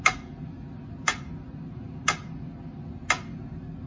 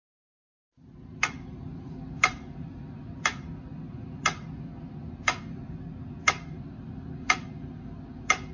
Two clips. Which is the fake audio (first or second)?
second